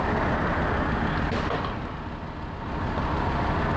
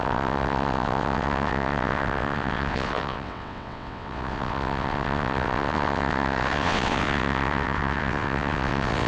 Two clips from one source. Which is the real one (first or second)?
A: first